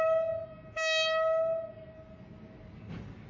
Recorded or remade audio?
recorded